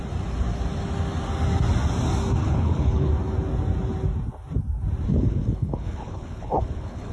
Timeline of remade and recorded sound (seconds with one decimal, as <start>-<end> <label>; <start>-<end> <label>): 0.0-2.4 recorded; 2.4-3.1 remade; 3.1-5.1 recorded; 5.1-7.1 remade